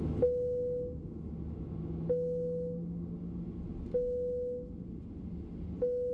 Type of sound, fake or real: real